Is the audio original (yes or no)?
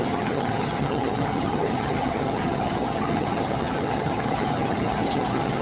no